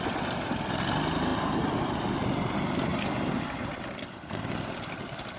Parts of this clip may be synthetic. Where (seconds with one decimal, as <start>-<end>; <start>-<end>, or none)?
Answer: 2.9-5.4